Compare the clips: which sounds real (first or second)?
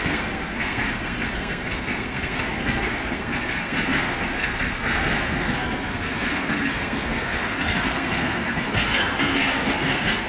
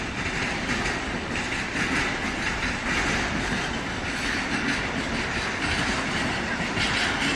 second